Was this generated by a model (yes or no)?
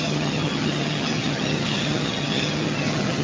yes